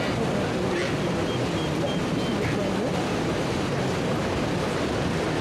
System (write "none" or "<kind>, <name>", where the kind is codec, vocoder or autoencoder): none